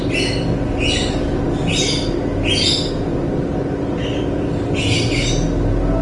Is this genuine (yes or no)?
yes